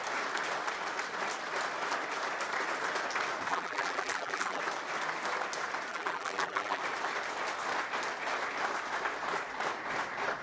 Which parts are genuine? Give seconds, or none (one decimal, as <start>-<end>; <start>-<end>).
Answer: 0.0-3.5; 4.6-5.9; 6.8-10.4